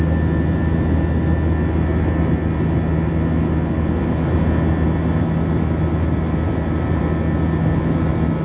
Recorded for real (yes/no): yes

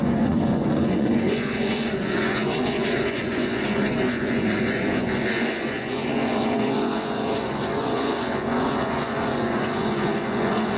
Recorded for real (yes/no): no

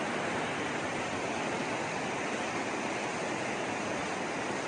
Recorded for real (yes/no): yes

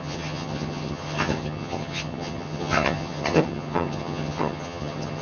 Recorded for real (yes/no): no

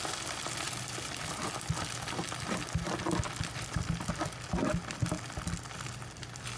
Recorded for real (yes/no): yes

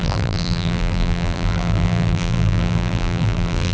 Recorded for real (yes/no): no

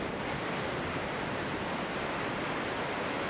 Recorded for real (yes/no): yes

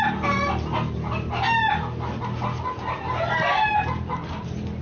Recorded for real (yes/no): yes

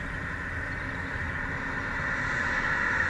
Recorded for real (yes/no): yes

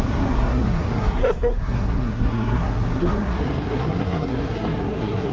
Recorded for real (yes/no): no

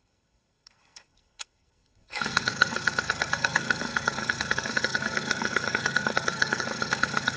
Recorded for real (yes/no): no